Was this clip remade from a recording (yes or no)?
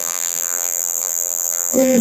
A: yes